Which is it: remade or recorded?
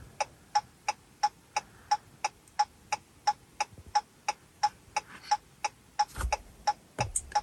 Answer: recorded